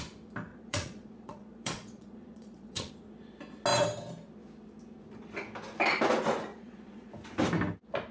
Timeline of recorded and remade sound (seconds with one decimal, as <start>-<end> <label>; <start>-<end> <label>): 0.0-0.5 recorded; 0.5-2.9 remade; 2.9-6.5 recorded; 6.5-7.1 remade; 7.1-8.1 recorded